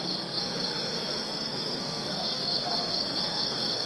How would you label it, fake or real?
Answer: fake